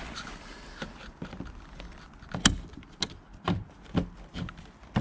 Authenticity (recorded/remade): recorded